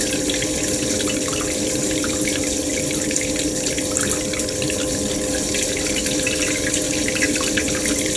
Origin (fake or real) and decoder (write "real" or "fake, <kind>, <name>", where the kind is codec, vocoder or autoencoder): real